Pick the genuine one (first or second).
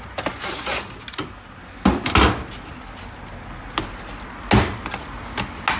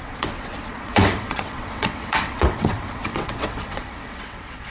first